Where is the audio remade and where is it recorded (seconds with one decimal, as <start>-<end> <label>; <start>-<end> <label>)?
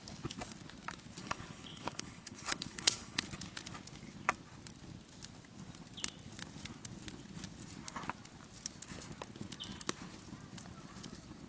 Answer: 0.0-1.2 recorded; 1.2-3.2 remade; 3.2-11.5 recorded